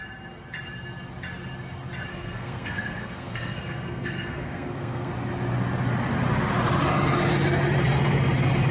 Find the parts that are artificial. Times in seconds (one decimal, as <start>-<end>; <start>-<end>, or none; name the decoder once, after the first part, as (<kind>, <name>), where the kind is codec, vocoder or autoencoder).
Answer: 2.1-5.1 (codec, SNAC)